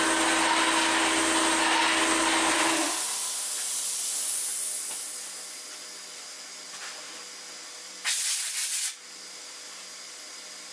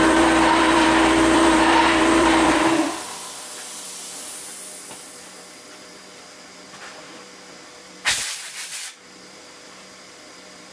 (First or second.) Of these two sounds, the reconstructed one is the second